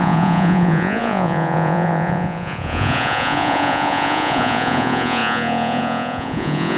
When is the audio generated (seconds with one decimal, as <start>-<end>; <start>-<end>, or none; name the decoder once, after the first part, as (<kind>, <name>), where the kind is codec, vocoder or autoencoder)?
0.0-6.8 (vocoder, Vocos)